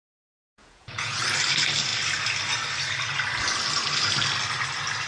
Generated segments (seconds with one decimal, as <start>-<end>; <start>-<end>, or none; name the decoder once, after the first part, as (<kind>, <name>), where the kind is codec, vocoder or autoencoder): 0.0-1.2 (vocoder, Vocos)